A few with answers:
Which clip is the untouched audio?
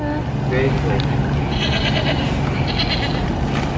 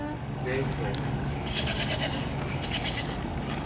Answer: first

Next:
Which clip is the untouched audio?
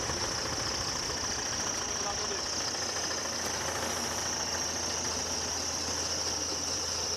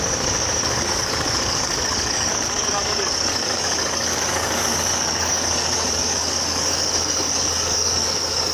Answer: first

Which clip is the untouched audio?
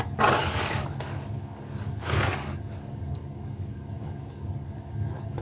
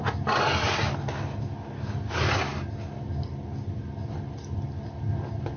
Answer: second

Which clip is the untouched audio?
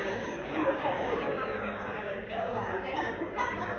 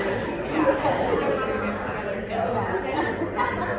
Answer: second